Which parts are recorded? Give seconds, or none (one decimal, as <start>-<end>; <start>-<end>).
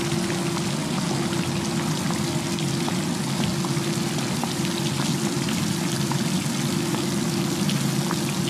0.0-8.5